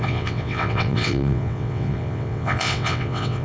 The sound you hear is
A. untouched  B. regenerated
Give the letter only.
B